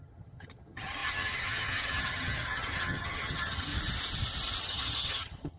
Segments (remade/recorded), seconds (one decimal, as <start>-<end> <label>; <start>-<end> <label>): 0.0-3.7 remade; 3.7-4.6 recorded; 4.6-5.6 remade